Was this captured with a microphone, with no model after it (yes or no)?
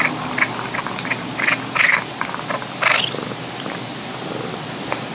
yes